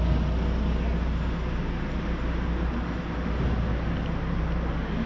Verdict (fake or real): real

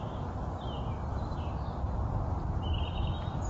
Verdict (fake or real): real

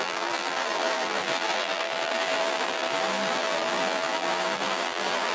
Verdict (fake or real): fake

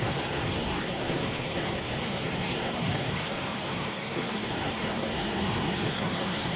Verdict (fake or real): fake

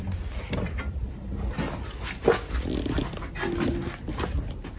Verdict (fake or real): real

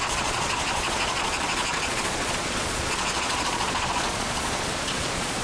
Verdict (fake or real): fake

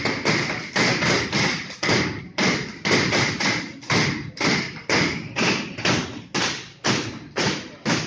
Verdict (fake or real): real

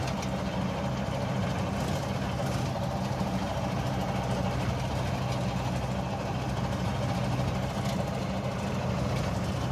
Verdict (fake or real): real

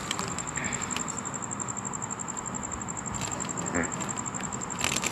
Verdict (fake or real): real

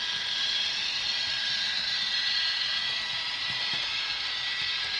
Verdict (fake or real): fake